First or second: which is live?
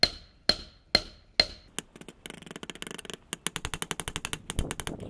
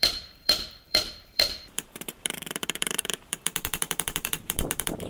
first